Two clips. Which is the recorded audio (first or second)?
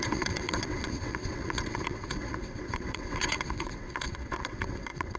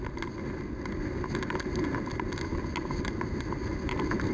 second